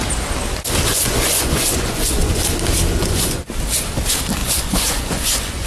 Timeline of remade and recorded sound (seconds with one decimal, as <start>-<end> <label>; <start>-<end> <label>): 0.0-0.9 recorded; 0.9-2.4 remade; 2.4-3.0 recorded; 3.0-3.5 remade; 3.5-4.4 recorded; 4.4-5.7 remade